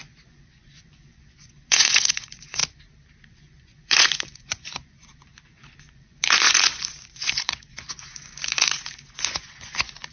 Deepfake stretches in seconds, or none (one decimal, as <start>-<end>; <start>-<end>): 0.0-2.6; 3.3-10.1